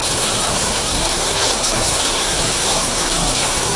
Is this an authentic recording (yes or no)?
no